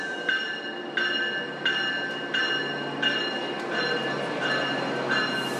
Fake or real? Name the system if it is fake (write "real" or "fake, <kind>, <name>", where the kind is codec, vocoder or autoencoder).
real